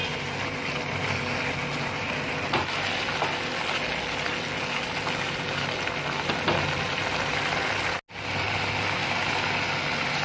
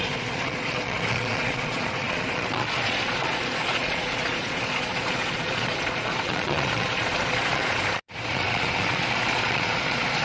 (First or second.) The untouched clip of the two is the first